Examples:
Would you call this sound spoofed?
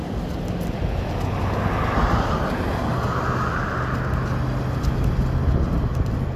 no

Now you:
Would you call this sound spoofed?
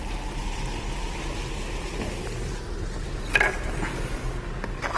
no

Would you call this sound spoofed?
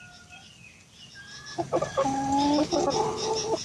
no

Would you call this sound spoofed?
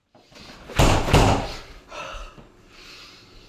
no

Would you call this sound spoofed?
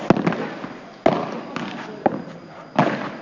no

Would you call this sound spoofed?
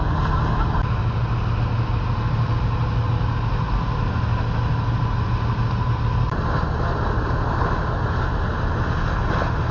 no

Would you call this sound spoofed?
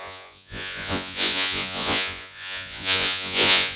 yes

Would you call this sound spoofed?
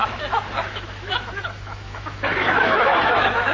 yes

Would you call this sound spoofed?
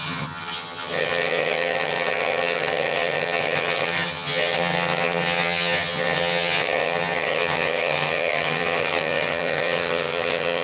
yes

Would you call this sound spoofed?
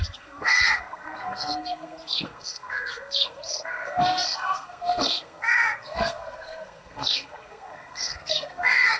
yes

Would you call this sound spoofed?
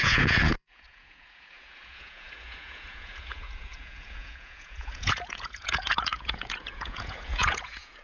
yes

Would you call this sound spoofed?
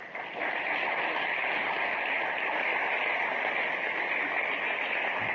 no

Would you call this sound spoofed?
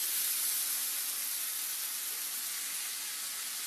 no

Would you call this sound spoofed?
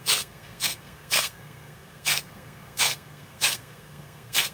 yes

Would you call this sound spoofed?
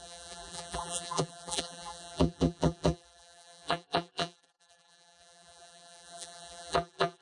yes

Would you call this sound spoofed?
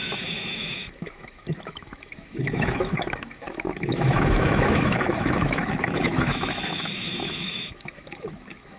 yes